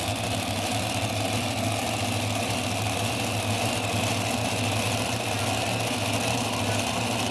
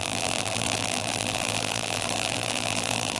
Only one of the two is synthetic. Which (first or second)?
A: second